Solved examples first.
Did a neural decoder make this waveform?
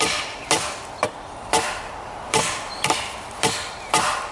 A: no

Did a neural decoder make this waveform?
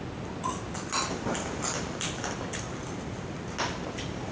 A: no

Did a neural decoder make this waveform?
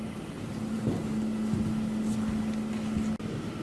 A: no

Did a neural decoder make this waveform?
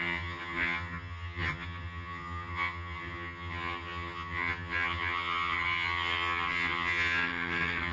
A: yes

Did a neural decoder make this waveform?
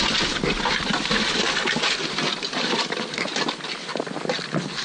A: no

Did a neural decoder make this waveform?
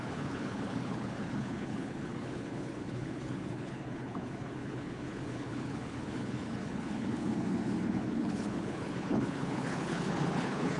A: yes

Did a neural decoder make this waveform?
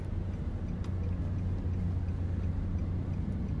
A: no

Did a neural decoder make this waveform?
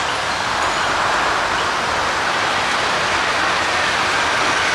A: no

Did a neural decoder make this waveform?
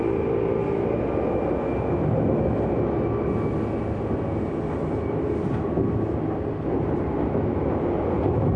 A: no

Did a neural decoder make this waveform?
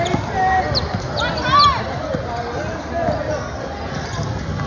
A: no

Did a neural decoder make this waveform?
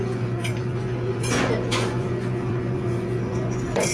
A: yes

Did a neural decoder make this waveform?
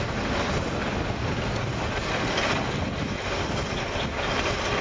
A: no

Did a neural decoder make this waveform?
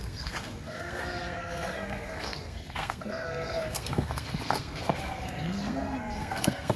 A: yes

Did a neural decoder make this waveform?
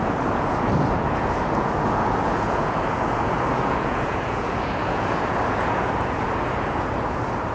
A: yes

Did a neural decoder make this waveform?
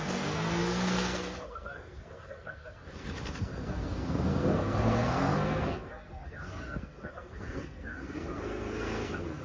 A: yes